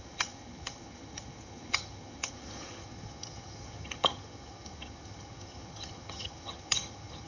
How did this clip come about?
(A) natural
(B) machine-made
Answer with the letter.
B